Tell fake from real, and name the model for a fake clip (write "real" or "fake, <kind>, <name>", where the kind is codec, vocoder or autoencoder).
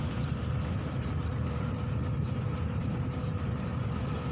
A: fake, vocoder, BigVGAN v2